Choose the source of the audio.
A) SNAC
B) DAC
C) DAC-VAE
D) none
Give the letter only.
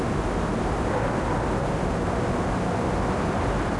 D